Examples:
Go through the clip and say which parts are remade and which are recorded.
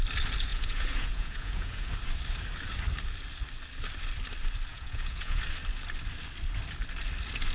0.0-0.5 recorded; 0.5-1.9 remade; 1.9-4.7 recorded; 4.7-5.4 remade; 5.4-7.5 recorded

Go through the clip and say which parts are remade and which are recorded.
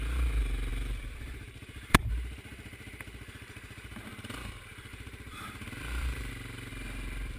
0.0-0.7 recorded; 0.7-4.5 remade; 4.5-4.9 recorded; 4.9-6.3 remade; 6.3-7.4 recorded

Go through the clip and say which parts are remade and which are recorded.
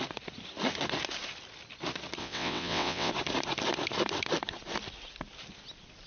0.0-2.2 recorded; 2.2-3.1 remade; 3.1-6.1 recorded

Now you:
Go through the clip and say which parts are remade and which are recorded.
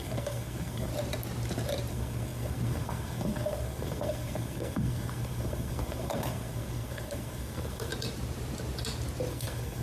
0.0-0.9 remade; 0.9-1.9 recorded; 1.9-7.9 remade; 7.9-9.3 recorded; 9.3-9.8 remade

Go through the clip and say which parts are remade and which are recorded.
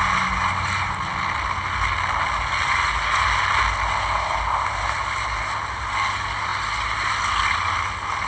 0.0-8.3 recorded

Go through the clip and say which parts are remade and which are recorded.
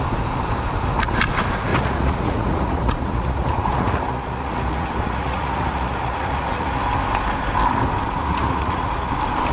0.0-1.7 recorded; 1.7-6.8 remade; 6.8-8.2 recorded; 8.2-9.1 remade; 9.1-9.5 recorded